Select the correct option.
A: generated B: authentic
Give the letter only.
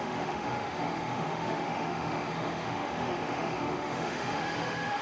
A